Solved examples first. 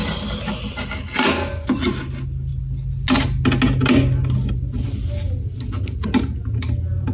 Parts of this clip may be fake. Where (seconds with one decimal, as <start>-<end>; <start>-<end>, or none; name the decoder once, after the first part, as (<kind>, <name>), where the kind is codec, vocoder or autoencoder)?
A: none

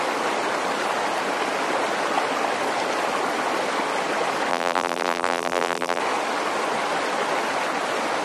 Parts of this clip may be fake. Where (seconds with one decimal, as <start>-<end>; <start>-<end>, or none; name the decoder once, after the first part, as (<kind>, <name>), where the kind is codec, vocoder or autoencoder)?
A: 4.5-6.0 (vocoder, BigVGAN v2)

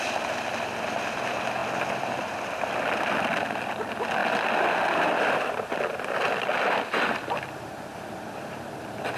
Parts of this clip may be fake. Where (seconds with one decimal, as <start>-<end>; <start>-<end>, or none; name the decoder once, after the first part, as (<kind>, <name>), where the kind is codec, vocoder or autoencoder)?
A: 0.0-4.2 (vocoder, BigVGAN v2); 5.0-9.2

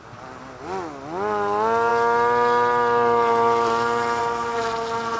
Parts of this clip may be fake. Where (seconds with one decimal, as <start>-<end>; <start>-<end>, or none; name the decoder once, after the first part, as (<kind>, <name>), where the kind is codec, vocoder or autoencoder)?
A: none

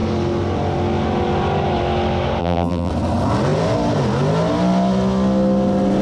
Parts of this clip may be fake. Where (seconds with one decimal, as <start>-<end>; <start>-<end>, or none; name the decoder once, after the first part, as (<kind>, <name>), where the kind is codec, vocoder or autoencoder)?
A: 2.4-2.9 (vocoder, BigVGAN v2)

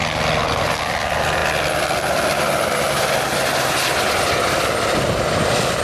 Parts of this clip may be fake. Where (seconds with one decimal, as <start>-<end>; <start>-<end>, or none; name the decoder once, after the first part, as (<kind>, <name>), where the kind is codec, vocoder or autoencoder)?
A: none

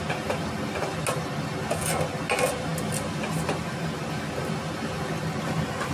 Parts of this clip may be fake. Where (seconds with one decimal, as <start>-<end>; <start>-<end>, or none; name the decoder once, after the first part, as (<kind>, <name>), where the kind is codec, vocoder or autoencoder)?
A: none